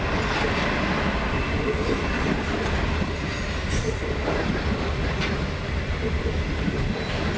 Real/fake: real